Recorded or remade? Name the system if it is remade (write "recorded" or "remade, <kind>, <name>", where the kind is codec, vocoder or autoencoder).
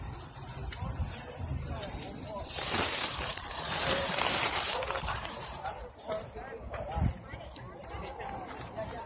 remade, vocoder, BigVGAN v2